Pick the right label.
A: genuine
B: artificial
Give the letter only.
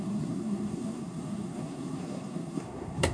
B